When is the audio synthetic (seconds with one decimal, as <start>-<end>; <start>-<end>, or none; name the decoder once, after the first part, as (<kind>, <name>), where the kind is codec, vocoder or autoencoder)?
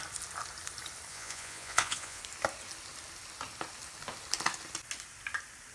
1.1-2.2 (vocoder, Vocos)